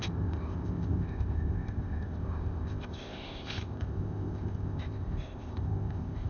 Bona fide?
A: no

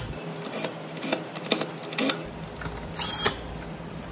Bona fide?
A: yes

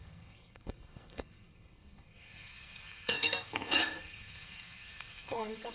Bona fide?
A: no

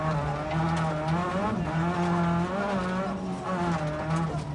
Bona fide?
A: yes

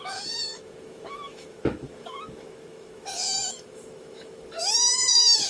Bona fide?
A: no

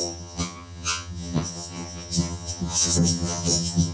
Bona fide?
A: no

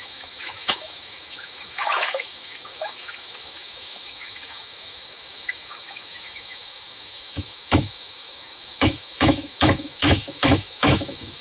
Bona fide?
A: no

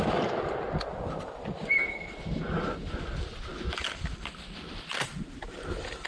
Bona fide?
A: yes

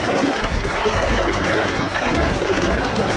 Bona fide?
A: no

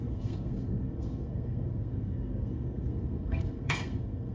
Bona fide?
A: no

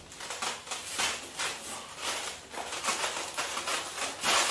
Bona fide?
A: yes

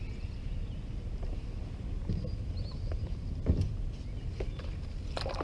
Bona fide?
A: yes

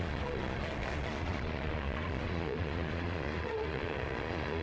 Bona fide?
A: no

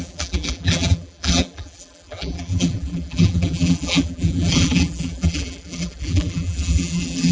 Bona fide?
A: no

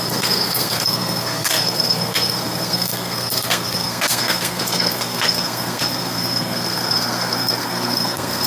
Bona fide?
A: no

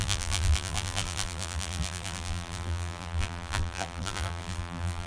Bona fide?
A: no